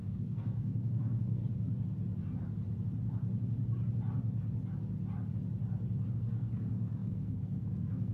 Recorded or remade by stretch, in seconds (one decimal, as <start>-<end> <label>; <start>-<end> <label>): 0.0-1.4 remade; 1.4-6.1 recorded; 6.1-8.1 remade

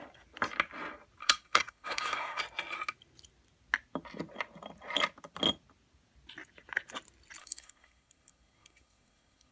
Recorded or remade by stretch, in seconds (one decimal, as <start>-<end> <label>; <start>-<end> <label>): 0.0-1.2 recorded; 1.2-2.4 remade; 2.4-7.4 recorded; 7.4-9.5 remade

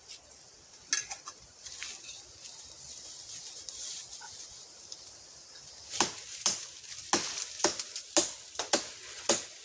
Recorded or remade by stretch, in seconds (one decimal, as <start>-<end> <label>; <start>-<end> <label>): 0.0-3.8 recorded; 3.8-4.3 remade; 4.3-9.6 recorded